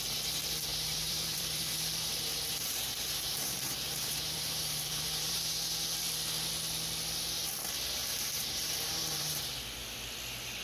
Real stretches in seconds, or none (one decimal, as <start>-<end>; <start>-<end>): 0.0-0.7; 5.5-8.0; 9.4-10.6